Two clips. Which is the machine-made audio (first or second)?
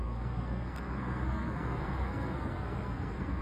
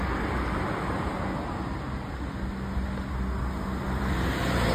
first